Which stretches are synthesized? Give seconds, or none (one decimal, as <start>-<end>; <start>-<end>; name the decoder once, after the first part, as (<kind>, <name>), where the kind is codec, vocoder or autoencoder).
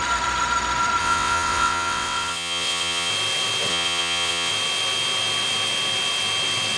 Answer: 1.0-3.1 (vocoder, WaveNeXt); 3.7-4.5